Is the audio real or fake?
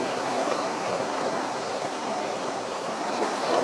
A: fake